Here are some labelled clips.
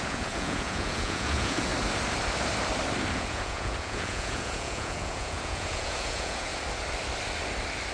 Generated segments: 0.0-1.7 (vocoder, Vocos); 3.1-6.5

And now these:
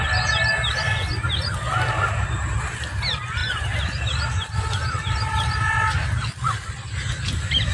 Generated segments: none

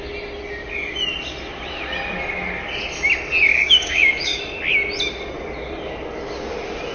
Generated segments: 3.5-4.4 (codec, DAC)

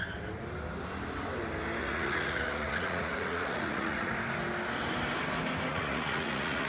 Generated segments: 1.8-4.1 (vocoder, Vocos); 5.7-6.7

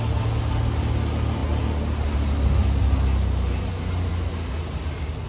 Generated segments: none

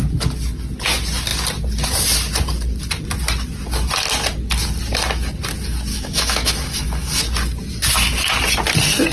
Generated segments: 5.9-7.2 (autoencoder, DAC-VAE)

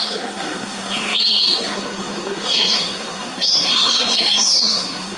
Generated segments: 0.0-5.2 (codec, SNAC)

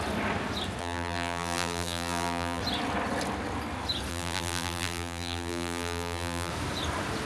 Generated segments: 0.8-2.6 (vocoder, BigVGAN v2); 4.1-6.5